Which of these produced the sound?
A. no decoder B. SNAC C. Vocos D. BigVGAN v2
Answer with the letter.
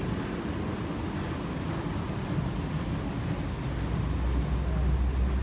A